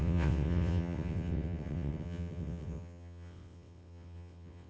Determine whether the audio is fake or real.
fake